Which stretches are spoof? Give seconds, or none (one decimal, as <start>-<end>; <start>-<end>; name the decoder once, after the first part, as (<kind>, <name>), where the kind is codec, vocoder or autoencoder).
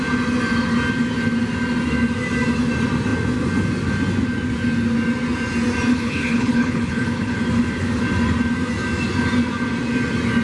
5.9-7.4 (codec, HILCodec)